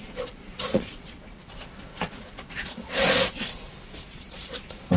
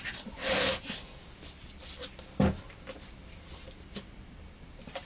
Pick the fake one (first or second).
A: first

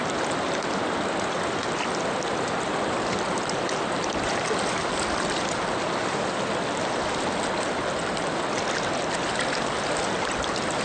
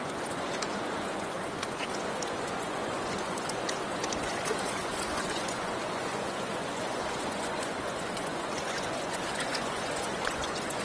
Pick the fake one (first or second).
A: second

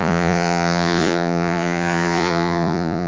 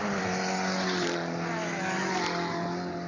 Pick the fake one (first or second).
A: first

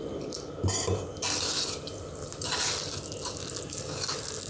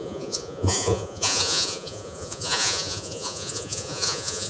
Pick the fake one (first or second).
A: second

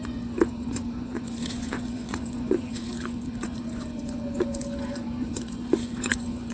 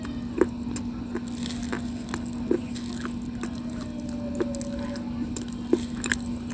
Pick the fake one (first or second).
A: first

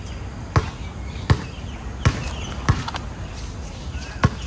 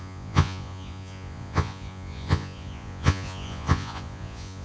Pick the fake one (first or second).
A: second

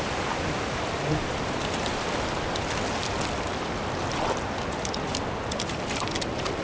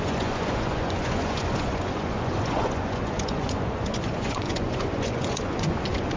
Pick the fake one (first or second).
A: second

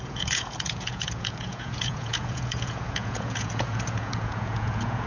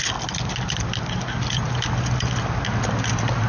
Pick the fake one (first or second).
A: first